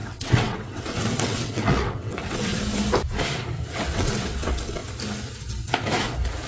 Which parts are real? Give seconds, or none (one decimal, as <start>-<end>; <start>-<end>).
2.5-3.7; 4.8-6.5